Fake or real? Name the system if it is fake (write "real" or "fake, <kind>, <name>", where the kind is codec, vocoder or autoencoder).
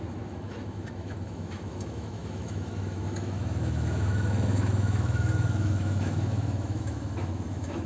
fake, autoencoder, DAC-VAE